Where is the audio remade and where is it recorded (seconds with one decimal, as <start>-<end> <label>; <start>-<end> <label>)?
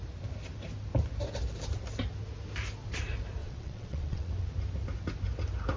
0.0-3.4 recorded; 3.4-4.3 remade; 4.3-5.8 recorded